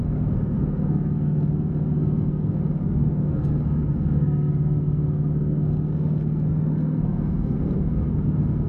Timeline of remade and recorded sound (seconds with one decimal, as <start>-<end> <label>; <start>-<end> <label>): 0.0-8.7 remade